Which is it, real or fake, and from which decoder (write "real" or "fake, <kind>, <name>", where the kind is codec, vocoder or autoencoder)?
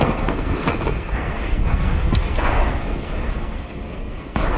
fake, codec, SNAC